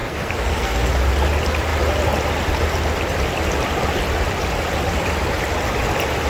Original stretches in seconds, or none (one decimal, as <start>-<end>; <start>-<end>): 0.9-6.3